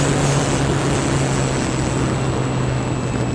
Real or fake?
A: real